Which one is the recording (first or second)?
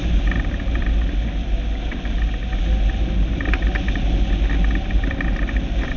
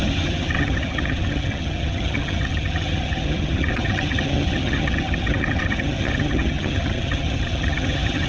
first